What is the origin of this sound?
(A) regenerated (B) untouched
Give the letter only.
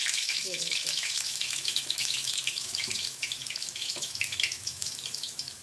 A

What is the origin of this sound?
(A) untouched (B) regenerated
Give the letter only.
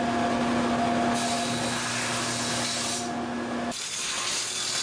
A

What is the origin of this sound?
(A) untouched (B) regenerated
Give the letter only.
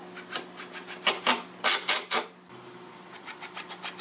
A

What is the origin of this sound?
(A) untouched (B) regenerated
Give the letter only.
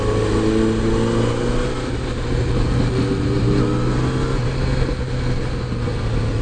A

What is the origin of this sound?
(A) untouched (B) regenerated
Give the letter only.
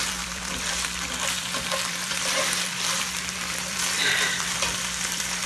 B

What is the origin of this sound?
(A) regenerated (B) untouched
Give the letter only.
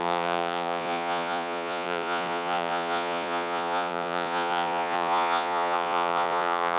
A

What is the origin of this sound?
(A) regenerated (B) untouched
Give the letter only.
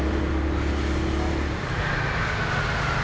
B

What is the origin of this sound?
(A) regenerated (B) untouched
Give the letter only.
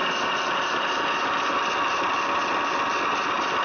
B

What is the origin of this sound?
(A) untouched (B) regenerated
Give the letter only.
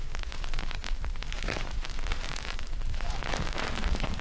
B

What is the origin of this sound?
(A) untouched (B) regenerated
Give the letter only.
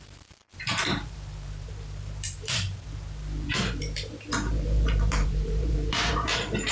B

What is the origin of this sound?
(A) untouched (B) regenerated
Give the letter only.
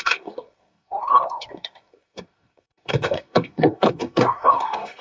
B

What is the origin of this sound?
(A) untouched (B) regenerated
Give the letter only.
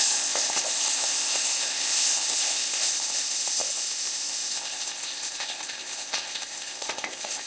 B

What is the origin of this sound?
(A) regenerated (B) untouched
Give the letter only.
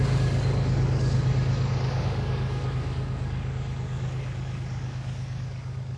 A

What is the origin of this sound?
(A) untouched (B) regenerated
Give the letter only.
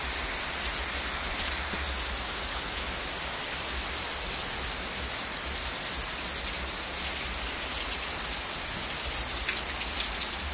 A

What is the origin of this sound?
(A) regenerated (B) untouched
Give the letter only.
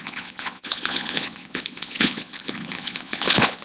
A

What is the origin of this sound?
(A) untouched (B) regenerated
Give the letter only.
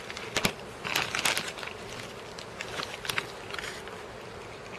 A